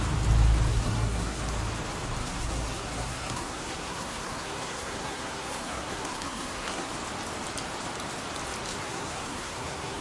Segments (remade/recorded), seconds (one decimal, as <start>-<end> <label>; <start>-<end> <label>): 0.0-0.7 recorded; 0.7-1.4 remade; 1.4-2.2 recorded; 2.2-6.9 remade; 6.9-8.7 recorded; 8.7-10.0 remade